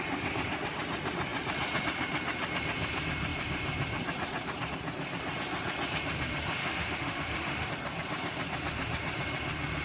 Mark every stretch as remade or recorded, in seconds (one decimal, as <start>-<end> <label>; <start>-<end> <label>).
0.0-6.6 recorded; 6.6-7.7 remade; 7.7-9.8 recorded